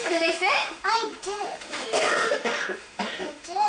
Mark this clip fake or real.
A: fake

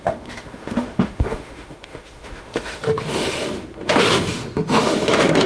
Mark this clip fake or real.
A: fake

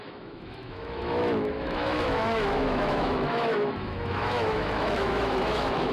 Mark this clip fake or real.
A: fake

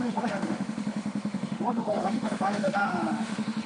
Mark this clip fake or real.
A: fake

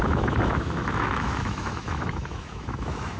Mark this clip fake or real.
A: fake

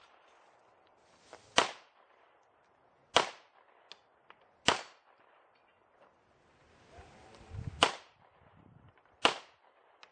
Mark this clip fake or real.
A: real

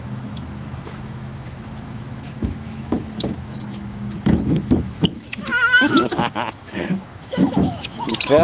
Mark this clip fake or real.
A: fake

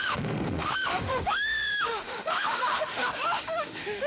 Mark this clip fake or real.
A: fake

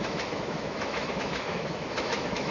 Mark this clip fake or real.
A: fake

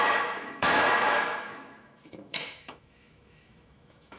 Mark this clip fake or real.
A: fake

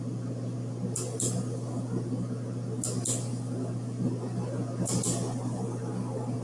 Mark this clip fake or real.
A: real